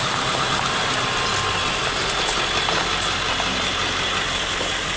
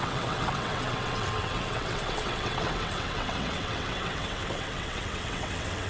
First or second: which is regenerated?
second